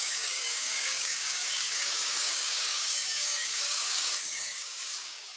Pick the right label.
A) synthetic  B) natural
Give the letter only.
A